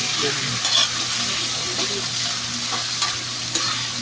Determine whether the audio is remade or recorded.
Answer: recorded